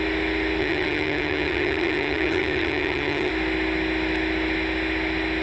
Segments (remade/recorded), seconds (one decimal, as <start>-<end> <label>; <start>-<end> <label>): 0.0-0.6 recorded; 0.6-3.3 remade; 3.3-5.4 recorded